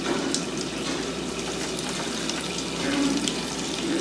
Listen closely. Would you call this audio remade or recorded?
remade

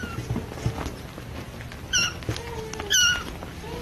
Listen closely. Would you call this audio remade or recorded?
recorded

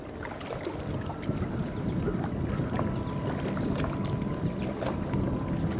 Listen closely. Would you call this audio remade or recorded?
recorded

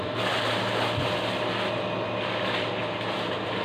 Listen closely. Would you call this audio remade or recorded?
recorded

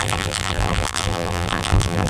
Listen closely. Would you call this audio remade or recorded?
remade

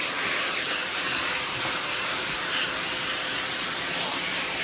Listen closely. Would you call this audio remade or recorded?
remade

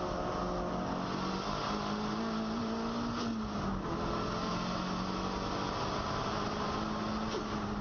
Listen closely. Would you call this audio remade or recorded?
recorded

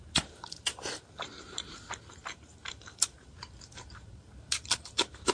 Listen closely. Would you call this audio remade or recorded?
remade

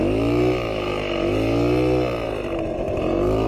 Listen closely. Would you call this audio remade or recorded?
recorded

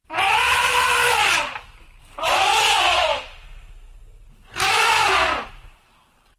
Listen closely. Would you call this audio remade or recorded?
remade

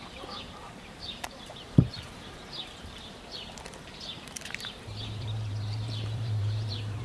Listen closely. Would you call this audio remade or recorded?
remade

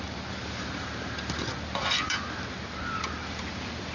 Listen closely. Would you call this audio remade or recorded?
remade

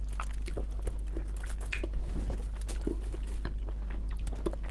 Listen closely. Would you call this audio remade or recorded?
recorded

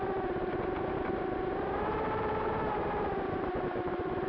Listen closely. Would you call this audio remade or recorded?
remade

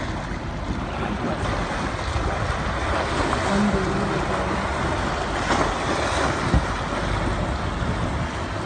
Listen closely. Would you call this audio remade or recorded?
recorded